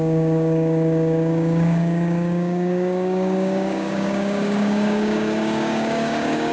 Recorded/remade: remade